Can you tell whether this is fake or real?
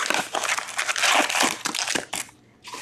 real